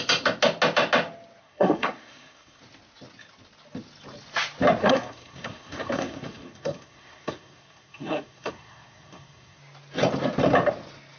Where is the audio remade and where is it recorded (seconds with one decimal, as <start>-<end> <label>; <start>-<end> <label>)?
0.0-1.4 recorded; 1.4-2.6 remade; 2.6-4.8 recorded; 4.8-9.6 remade; 9.6-11.2 recorded